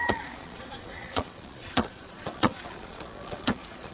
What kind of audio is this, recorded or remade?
remade